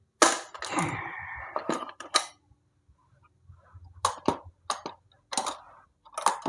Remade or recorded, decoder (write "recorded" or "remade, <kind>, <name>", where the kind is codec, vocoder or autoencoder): recorded